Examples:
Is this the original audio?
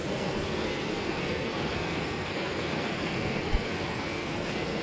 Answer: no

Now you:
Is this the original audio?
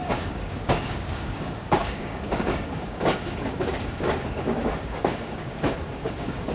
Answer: no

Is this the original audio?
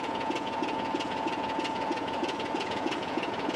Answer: no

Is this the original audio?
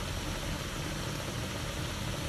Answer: yes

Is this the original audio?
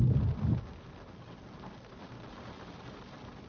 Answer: yes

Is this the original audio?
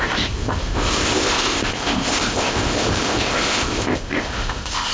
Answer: no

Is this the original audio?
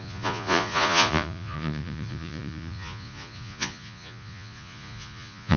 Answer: no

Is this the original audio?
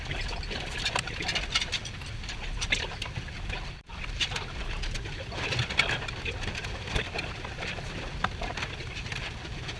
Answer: yes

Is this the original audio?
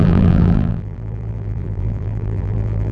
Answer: no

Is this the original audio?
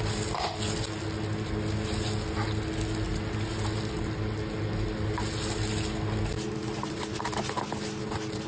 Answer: yes